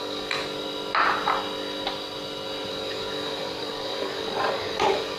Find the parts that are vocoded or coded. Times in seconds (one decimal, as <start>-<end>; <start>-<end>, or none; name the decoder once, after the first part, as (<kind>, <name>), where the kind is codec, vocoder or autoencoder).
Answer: 0.0-0.4 (codec, DAC); 2.7-5.2